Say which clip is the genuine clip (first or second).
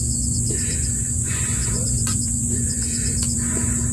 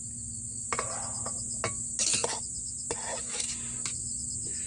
second